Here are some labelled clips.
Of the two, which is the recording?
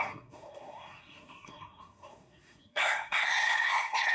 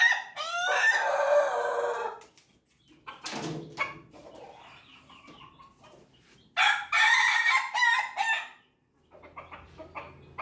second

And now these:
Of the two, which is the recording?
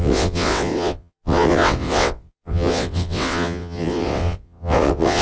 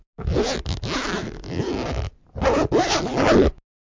second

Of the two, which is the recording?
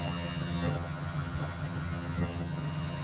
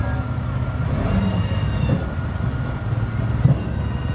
second